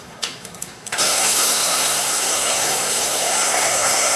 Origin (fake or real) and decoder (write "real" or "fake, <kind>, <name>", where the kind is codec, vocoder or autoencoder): fake, codec, SNAC